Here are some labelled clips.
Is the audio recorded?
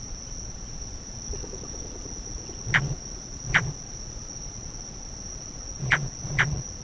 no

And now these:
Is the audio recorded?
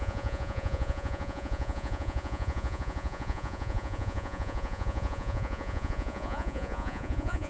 no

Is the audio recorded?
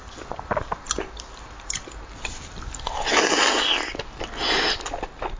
yes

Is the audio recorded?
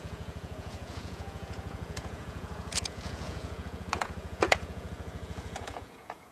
no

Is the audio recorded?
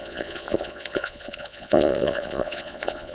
no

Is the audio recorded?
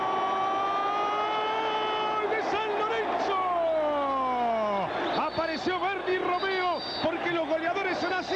yes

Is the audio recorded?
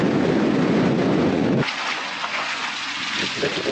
no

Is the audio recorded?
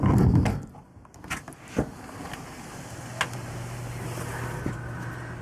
yes